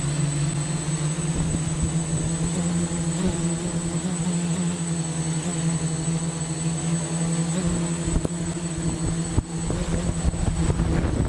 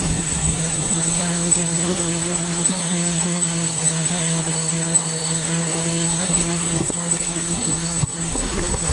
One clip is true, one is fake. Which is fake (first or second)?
second